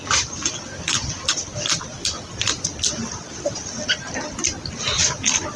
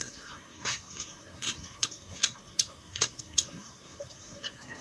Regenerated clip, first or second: second